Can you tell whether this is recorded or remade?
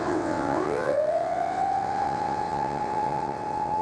remade